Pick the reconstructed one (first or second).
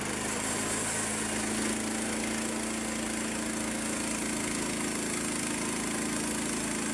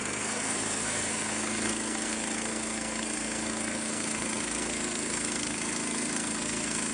second